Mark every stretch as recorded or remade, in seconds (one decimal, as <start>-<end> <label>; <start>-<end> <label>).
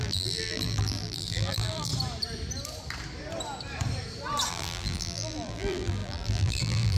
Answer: 0.0-1.9 remade; 1.9-4.5 recorded; 4.5-7.0 remade